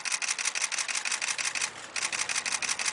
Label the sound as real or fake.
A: real